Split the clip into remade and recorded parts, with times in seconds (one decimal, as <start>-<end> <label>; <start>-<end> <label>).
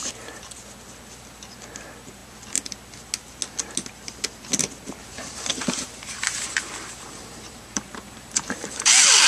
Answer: 0.0-5.0 recorded; 5.0-8.9 remade; 8.9-9.3 recorded